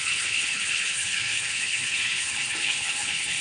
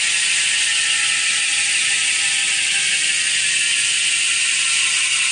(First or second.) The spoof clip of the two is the first